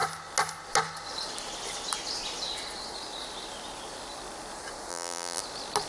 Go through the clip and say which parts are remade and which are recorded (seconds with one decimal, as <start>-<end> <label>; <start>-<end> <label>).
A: 0.0-4.9 recorded; 4.9-5.4 remade; 5.4-5.9 recorded